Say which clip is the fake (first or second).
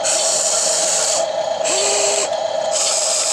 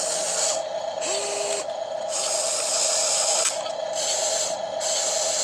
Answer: first